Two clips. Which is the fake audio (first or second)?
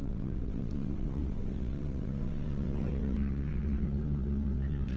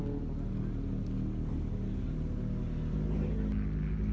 first